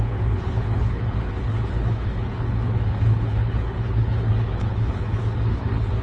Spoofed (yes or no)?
yes